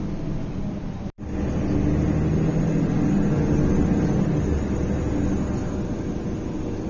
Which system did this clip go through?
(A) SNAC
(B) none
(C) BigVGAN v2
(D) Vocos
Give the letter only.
B